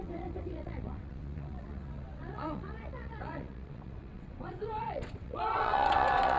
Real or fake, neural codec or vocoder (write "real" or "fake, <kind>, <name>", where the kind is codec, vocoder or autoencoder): fake, vocoder, WaveNeXt